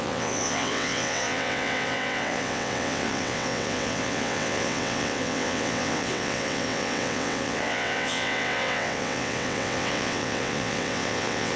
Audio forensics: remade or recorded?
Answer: remade